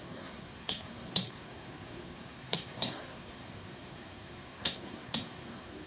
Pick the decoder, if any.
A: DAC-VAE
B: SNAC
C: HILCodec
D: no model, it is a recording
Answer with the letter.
B